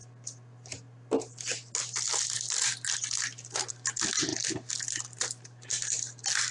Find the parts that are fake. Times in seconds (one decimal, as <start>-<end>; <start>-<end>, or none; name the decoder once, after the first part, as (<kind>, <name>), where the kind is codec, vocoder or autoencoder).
none